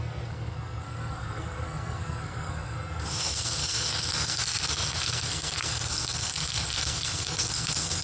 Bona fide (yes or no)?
no